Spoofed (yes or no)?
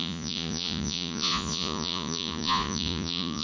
yes